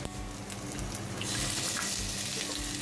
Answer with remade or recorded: recorded